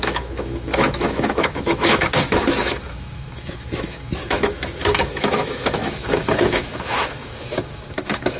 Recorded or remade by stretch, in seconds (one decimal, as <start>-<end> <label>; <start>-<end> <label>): 0.0-8.4 remade